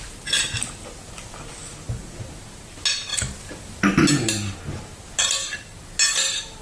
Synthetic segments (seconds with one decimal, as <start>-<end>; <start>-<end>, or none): none